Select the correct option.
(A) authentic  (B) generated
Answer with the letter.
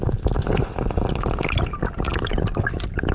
A